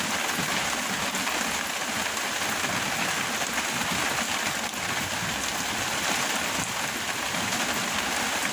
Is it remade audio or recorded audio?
recorded